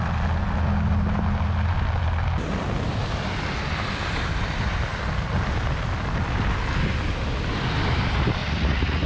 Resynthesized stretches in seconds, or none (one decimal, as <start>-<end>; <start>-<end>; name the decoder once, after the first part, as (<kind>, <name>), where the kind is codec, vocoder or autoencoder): 8.4-9.1 (vocoder, Vocos)